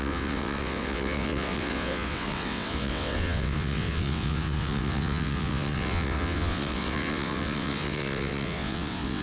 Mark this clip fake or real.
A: fake